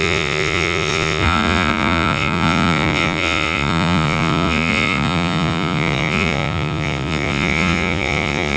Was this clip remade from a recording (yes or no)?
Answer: yes